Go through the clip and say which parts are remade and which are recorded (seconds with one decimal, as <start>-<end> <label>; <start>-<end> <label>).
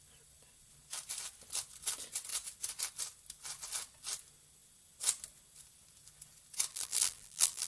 0.0-6.7 recorded; 6.7-7.7 remade